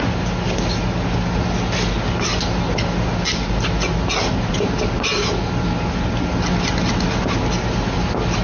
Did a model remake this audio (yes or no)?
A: no